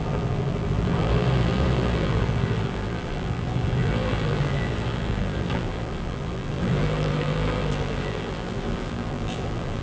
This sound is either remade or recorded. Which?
remade